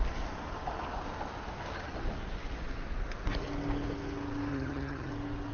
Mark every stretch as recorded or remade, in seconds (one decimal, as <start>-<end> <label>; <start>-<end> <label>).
0.0-4.5 recorded; 4.5-5.1 remade; 5.1-5.5 recorded